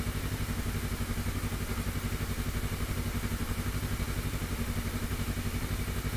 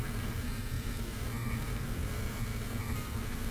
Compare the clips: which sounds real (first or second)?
first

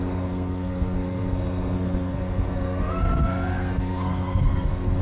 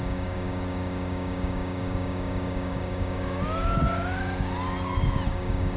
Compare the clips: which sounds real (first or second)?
second